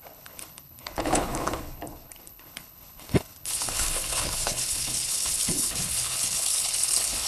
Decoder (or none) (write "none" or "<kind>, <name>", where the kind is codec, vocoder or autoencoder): codec, HILCodec